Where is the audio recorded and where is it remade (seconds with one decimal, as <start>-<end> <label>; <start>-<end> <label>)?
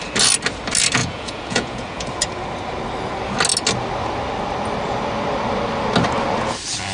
0.0-1.0 recorded; 1.0-2.1 remade; 2.1-6.9 recorded